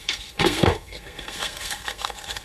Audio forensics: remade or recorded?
remade